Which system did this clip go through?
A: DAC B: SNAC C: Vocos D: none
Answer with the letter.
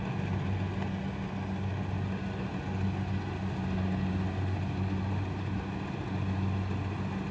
D